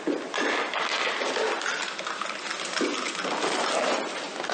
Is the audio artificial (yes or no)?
no